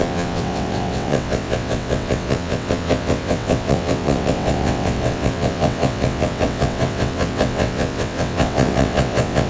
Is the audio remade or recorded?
remade